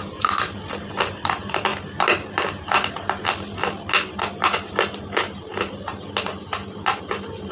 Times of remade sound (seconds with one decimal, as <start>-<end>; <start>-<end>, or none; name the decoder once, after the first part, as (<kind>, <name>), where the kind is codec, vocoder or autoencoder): none